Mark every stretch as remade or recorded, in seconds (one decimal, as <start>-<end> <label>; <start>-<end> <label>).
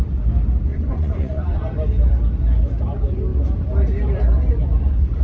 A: 0.0-0.7 recorded; 0.7-1.6 remade; 1.6-5.2 recorded